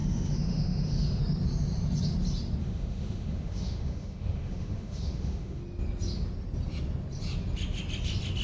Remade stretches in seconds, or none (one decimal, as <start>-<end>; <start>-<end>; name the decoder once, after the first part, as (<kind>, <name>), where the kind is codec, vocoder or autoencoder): 0.0-1.2 (autoencoder, DAC-VAE); 2.6-5.6